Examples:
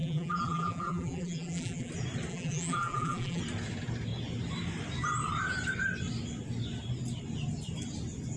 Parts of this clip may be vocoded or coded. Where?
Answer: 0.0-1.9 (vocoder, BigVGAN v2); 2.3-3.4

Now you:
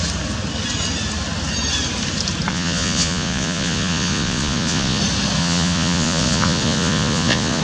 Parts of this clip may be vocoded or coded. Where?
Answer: 2.5-5.0 (vocoder, Vocos); 5.4-7.6

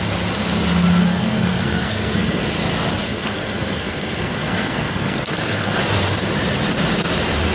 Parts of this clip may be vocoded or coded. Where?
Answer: 1.0-2.4 (codec, SNAC); 3.1-5.8

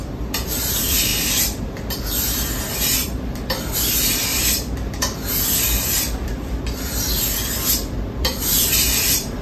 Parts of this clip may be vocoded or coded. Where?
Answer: 0.0-9.4 (vocoder, BigVGAN v2)

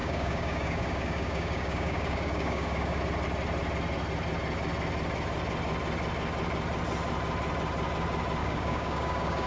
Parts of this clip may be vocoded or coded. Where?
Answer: 0.0-3.0 (codec, DAC); 8.4-9.5

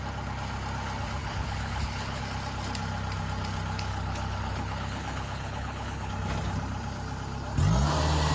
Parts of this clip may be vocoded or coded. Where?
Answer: 1.2-2.2 (codec, HILCodec); 3.9-6.1

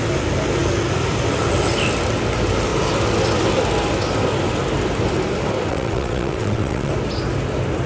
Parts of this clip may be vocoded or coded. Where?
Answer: 5.7-6.9 (vocoder, WaveNeXt)

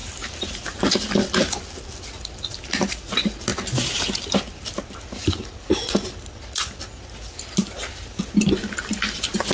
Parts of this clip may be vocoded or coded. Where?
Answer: 0.0-0.8 (vocoder, BigVGAN v2)